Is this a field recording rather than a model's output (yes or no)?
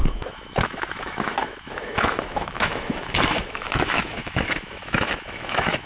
no